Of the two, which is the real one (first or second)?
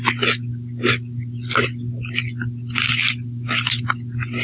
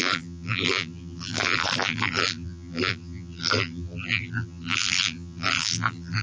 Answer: first